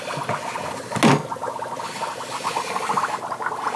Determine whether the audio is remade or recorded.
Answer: recorded